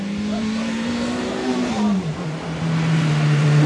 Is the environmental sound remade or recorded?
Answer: remade